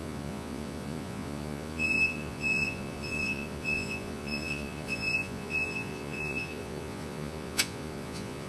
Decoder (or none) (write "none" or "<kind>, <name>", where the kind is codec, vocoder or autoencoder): vocoder, Vocos